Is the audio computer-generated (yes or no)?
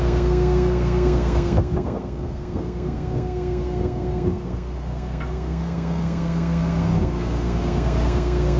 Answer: yes